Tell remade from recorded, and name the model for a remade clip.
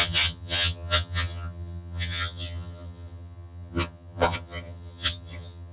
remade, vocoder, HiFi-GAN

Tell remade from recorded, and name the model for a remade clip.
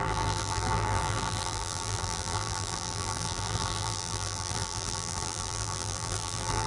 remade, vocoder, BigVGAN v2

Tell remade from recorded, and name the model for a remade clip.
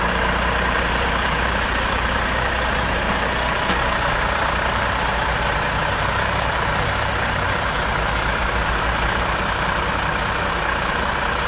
remade, vocoder, BigVGAN v2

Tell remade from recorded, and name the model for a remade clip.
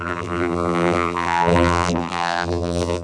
remade, vocoder, BigVGAN v2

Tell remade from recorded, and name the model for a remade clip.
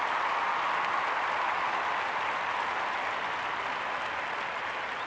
recorded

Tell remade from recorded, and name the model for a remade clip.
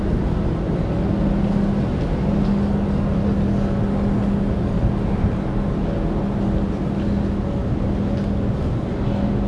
recorded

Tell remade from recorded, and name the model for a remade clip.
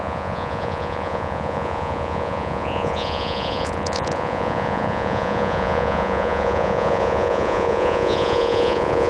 remade, vocoder, Vocos